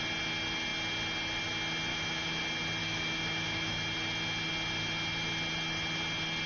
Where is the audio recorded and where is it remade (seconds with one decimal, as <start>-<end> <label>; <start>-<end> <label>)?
0.0-1.9 recorded; 1.9-2.4 remade; 2.4-2.8 recorded; 2.8-3.8 remade; 3.8-6.5 recorded